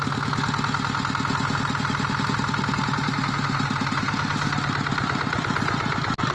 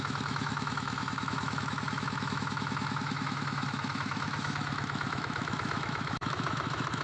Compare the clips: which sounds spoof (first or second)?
second